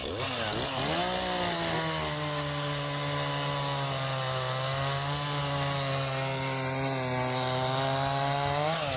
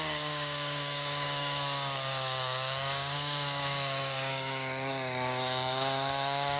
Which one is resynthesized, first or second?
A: second